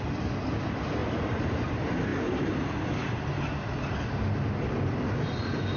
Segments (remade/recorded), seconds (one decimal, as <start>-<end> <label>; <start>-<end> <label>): 0.0-1.0 recorded; 1.0-1.7 remade; 1.7-5.8 recorded

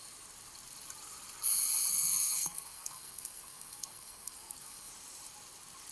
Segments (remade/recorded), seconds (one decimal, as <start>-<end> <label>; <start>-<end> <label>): 0.0-1.9 recorded; 1.9-4.9 remade; 4.9-5.9 recorded

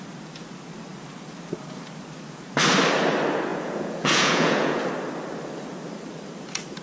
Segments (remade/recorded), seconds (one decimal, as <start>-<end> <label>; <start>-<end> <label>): 0.0-3.5 recorded; 3.5-4.8 remade; 4.8-6.8 recorded

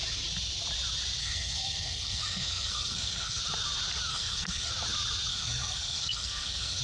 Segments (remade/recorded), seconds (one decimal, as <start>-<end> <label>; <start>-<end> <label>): 0.0-1.2 recorded; 1.2-3.4 remade; 3.4-4.1 recorded; 4.1-4.7 remade; 4.7-5.3 recorded; 5.3-6.8 remade

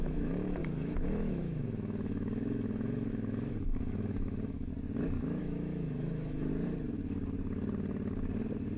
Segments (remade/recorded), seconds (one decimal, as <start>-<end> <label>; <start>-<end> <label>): 0.0-4.7 remade; 4.7-5.4 recorded; 5.4-6.5 remade; 6.5-8.8 recorded

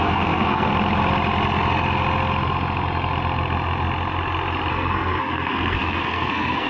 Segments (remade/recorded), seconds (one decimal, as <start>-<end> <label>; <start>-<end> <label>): 0.0-0.7 remade; 0.7-4.7 recorded; 4.7-6.7 remade

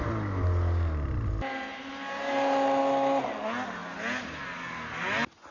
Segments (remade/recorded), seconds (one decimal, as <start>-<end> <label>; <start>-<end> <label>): 0.0-5.5 recorded

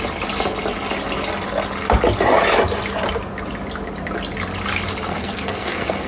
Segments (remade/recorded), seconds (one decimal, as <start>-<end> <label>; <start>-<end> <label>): 0.0-5.1 recorded; 5.1-6.1 remade